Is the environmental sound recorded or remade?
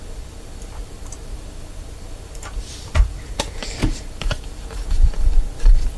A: remade